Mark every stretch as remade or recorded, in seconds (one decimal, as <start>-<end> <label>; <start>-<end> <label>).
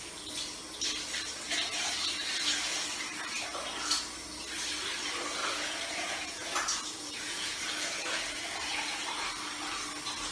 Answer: 0.0-5.4 recorded; 5.4-9.0 remade; 9.0-10.3 recorded